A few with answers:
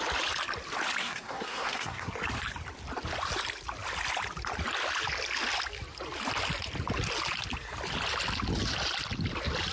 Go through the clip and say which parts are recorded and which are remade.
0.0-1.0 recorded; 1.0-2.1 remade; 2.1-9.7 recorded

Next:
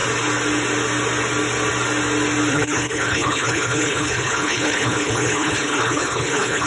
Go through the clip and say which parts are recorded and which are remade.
0.0-2.5 recorded; 2.5-6.7 remade

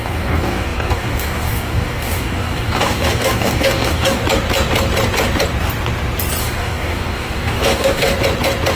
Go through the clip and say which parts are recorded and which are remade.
0.0-4.2 remade; 4.2-6.4 recorded; 6.4-8.1 remade; 8.1-8.8 recorded

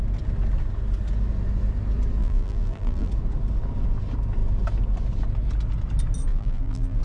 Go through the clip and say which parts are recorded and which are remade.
0.0-2.2 recorded; 2.2-3.1 remade; 3.1-6.3 recorded; 6.3-7.0 remade

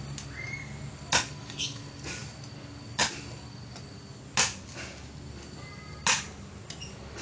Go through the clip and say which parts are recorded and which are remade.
0.0-7.2 recorded